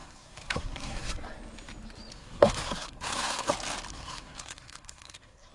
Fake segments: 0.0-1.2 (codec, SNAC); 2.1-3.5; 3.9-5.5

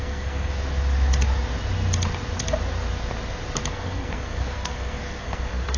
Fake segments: 0.0-0.5 (codec, SNAC); 3.7-5.8

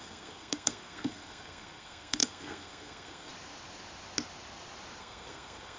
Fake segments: 0.0-3.3 (codec, SNAC); 5.0-5.8